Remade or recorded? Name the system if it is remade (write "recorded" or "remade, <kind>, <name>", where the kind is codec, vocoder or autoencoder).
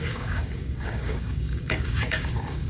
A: remade, codec, DAC